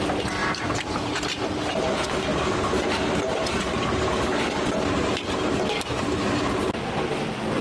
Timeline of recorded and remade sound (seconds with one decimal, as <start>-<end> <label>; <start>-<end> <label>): 0.0-0.4 recorded; 0.4-1.2 remade; 1.2-7.6 recorded